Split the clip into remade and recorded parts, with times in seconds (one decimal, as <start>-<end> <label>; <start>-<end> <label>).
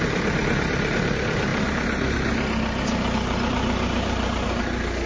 0.0-5.1 remade